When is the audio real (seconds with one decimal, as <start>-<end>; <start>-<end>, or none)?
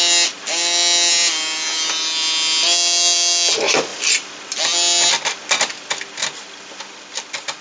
0.0-7.6